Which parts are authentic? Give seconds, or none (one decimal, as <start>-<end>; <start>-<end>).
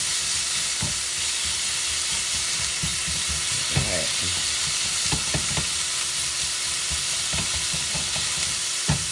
0.0-9.1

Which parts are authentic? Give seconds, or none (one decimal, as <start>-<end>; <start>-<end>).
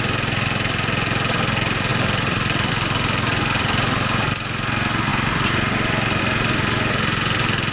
0.0-1.9; 2.7-3.3; 4.3-5.1; 6.2-7.7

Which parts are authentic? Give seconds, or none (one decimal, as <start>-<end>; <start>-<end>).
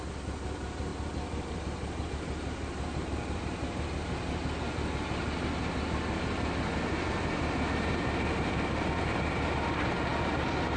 0.0-0.9; 2.1-10.8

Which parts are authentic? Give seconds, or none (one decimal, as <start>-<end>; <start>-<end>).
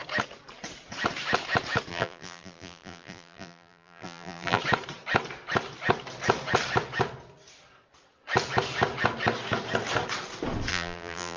0.0-1.9; 4.6-10.7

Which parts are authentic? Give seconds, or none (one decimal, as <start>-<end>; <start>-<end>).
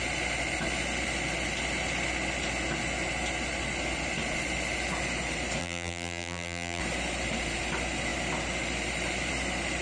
0.0-5.6; 6.8-9.8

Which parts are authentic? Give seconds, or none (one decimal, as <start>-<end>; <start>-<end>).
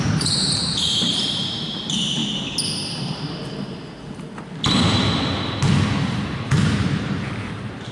2.2-6.0